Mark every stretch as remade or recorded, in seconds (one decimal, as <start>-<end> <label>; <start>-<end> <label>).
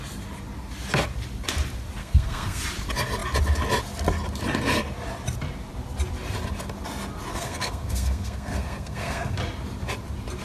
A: 0.0-2.0 recorded; 2.0-2.6 remade; 2.6-7.3 recorded; 7.3-9.4 remade; 9.4-10.4 recorded